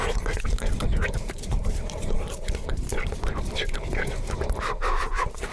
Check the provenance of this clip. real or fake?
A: fake